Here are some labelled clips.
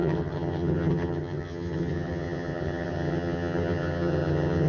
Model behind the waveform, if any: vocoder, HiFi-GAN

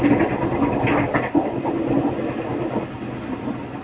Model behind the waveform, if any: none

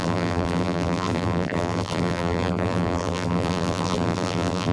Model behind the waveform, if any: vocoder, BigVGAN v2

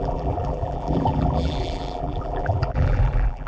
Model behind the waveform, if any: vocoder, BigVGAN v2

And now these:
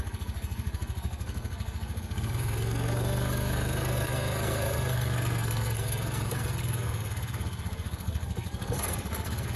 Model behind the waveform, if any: codec, SNAC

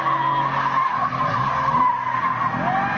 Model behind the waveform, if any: none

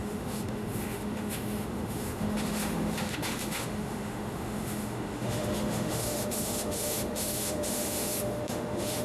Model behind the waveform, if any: autoencoder, DAC-VAE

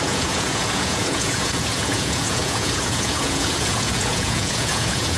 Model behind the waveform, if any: vocoder, Vocos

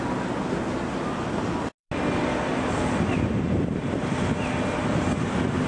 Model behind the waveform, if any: none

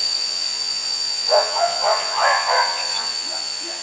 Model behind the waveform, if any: vocoder, Vocos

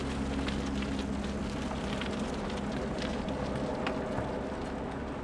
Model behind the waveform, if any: none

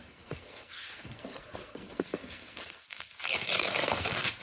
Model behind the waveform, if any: codec, SNAC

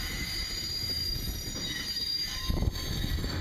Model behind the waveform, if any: none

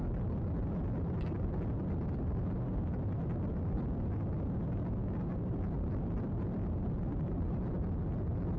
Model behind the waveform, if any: none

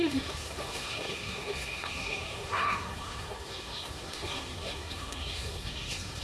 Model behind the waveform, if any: codec, SNAC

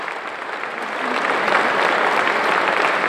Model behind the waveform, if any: none